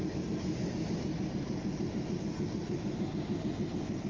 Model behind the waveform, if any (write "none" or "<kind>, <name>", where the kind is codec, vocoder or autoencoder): none